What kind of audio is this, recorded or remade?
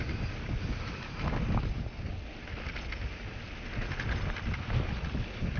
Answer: recorded